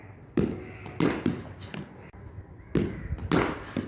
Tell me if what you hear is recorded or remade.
recorded